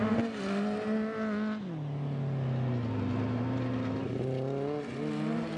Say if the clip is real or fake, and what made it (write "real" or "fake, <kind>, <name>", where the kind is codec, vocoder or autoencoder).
real